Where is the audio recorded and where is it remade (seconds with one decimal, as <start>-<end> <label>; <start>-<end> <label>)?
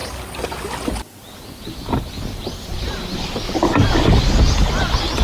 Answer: 0.0-5.2 recorded